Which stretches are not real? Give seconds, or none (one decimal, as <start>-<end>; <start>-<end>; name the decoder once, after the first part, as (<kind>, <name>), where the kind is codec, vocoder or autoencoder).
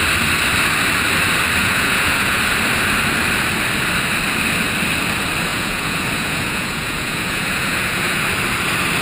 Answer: 1.6-2.4 (vocoder, Vocos); 5.5-8.2